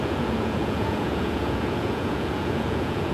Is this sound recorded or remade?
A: remade